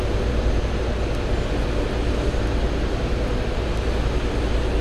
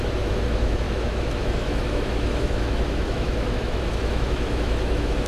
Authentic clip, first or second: first